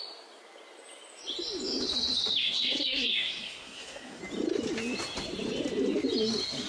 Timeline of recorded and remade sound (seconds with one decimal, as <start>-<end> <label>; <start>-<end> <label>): 0.0-2.4 recorded; 2.4-4.2 remade; 4.2-6.7 recorded

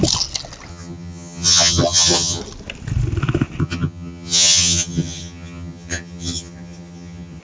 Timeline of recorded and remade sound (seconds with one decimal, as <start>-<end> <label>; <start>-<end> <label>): 0.0-0.7 recorded; 0.7-2.4 remade; 2.4-3.6 recorded; 3.6-7.4 remade

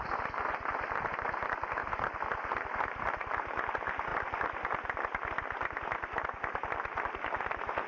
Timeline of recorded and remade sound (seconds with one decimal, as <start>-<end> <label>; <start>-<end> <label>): 0.0-7.9 recorded

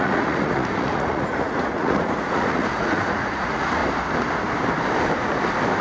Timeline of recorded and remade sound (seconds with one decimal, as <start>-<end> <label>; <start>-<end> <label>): 0.0-3.8 remade; 3.8-5.8 recorded

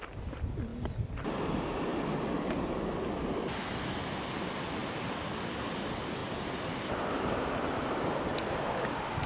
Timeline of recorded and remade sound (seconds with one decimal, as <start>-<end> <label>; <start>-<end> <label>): 0.0-6.2 recorded; 6.2-7.3 remade; 7.3-9.3 recorded

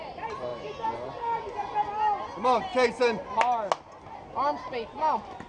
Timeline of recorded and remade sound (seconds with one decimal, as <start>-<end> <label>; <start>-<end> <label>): 0.0-5.5 recorded

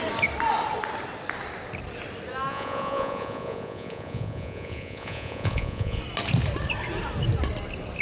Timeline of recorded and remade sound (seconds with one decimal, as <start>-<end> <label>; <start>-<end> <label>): 0.0-2.5 recorded; 2.5-6.0 remade; 6.0-8.0 recorded

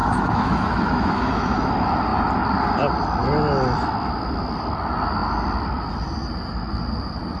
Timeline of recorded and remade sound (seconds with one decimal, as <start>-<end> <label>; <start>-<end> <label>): 0.0-1.7 remade; 1.7-7.4 recorded